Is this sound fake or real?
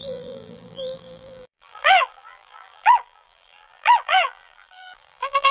fake